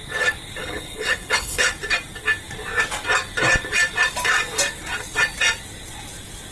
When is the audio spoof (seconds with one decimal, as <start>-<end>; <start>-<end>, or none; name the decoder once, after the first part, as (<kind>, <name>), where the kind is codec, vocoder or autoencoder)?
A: 0.6-1.7 (codec, HILCodec)